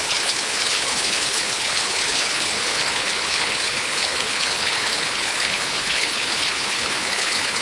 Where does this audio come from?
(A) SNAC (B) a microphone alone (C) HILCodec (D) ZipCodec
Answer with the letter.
C